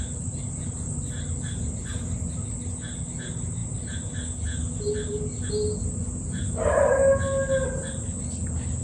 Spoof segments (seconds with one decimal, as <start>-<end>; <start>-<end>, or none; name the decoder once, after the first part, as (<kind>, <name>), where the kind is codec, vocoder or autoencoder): none